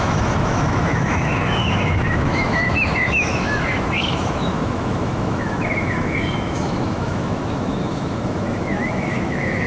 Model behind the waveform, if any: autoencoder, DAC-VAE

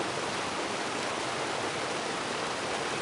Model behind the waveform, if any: none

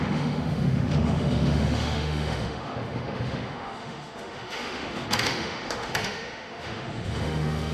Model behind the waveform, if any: autoencoder, DAC-VAE